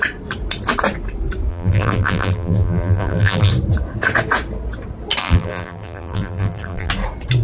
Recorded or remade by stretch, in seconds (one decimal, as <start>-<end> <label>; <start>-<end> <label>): 0.0-1.5 recorded; 1.5-3.5 remade; 3.5-5.2 recorded; 5.2-6.9 remade; 6.9-7.4 recorded

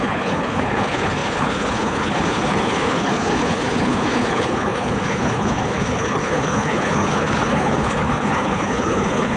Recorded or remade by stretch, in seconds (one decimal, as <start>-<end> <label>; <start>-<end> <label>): 0.0-9.4 remade